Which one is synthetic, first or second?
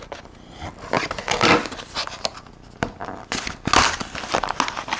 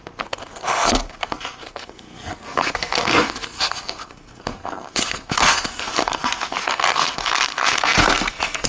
second